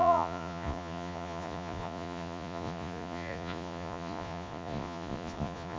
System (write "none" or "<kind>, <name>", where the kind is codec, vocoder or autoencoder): vocoder, Vocos